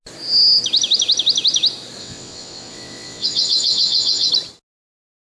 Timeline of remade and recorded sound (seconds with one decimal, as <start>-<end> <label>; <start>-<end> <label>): 0.0-2.0 recorded; 2.0-4.3 remade; 4.3-5.3 recorded